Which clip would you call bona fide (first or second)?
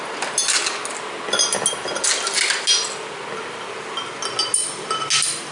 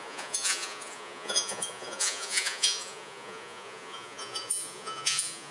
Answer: first